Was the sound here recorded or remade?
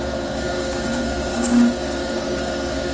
remade